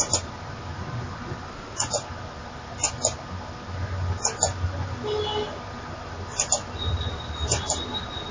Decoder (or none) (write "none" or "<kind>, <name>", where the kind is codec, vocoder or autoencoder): none